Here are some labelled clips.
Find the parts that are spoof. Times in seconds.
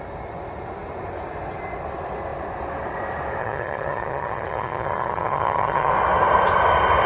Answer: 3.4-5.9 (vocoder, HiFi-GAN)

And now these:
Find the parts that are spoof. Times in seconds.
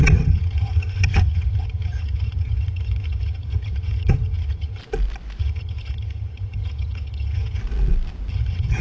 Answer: 0.0-4.8 (vocoder, HiFi-GAN); 5.4-7.6; 8.3-8.8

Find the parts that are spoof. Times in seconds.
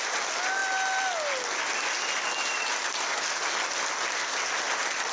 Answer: none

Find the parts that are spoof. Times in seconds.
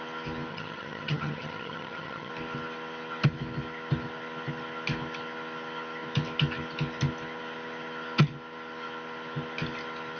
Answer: 0.5-2.3 (vocoder, HiFi-GAN)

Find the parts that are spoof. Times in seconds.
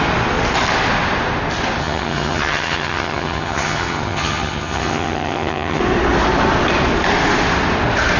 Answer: 1.8-5.8 (vocoder, HiFi-GAN)